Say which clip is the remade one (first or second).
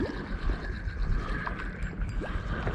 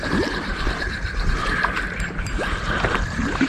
second